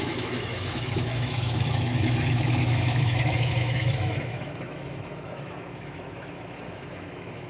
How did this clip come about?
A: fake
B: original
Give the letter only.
A